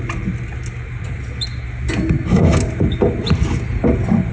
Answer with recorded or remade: recorded